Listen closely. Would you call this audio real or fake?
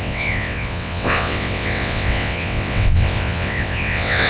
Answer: fake